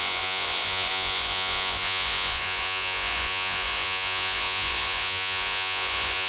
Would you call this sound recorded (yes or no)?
no